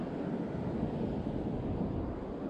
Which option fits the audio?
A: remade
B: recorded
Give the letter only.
B